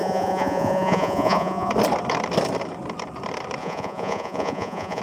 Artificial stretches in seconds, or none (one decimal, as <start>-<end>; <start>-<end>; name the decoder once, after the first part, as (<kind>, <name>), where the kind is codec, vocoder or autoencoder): 0.0-1.7 (vocoder, Vocos); 3.6-5.0